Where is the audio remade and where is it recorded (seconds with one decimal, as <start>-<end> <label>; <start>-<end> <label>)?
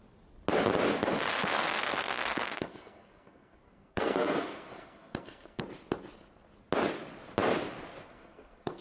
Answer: 0.0-1.4 recorded; 1.4-5.6 remade; 5.6-7.9 recorded; 7.9-8.8 remade